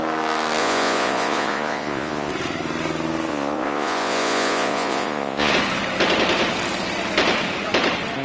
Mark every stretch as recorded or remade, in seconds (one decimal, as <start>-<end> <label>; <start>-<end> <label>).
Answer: 0.0-0.6 recorded; 0.6-2.3 remade; 2.3-3.3 recorded; 3.3-5.5 remade; 5.5-8.2 recorded